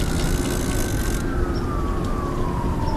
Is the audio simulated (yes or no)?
no